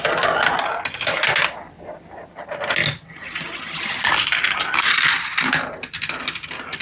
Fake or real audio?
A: real